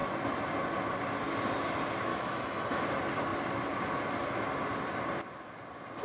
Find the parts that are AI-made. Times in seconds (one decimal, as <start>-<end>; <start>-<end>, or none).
2.1-2.8

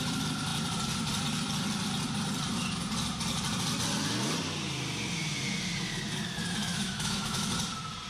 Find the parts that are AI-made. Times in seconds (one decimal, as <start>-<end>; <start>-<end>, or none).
6.7-7.5

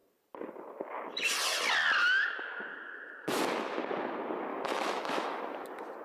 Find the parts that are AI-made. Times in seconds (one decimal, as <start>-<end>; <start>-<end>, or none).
2.0-3.4; 4.5-5.4

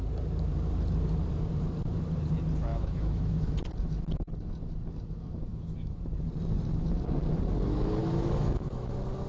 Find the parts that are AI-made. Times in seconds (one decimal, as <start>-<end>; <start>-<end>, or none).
2.7-3.5; 5.5-6.0; 8.0-8.9

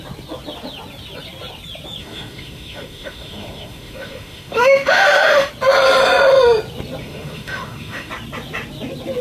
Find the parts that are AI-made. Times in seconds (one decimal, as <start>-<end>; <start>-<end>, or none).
2.0-5.5; 7.0-8.1

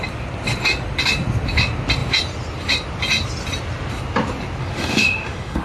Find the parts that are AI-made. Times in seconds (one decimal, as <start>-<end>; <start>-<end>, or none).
4.6-5.6